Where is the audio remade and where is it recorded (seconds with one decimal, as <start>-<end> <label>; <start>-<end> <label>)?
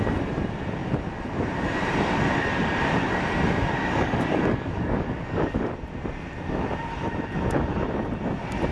0.0-3.8 recorded; 3.8-5.7 remade; 5.7-8.7 recorded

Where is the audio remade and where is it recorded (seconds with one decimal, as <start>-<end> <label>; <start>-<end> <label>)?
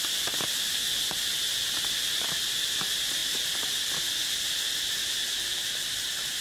0.0-6.4 recorded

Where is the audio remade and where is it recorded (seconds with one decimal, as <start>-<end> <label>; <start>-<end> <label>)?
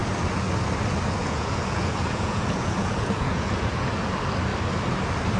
0.0-1.2 recorded; 1.2-3.9 remade; 3.9-5.4 recorded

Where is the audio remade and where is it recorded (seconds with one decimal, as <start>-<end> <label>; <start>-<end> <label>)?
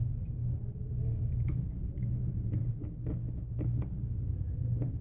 0.0-2.6 remade; 2.6-4.4 recorded; 4.4-5.0 remade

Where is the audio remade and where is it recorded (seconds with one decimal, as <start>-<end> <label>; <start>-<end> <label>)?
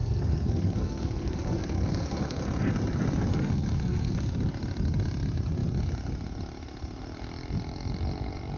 0.0-2.4 remade; 2.4-3.3 recorded; 3.3-4.1 remade; 4.1-8.6 recorded